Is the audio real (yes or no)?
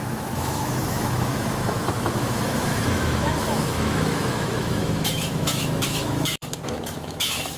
no